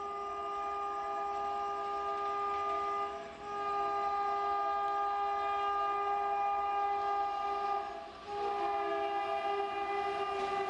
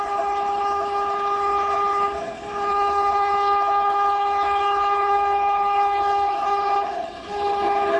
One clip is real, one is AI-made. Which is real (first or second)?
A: first